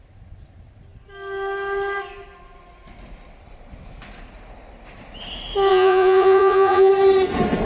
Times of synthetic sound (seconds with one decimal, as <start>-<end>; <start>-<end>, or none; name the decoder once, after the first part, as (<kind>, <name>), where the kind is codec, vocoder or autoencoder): 5.7-6.9 (vocoder, Vocos)